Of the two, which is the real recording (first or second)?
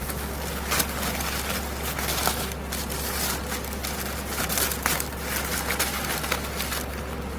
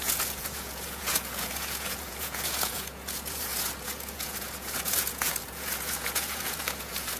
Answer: first